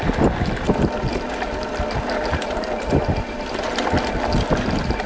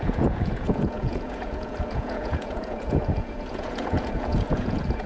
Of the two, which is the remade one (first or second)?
second